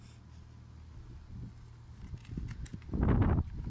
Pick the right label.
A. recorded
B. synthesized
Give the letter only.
A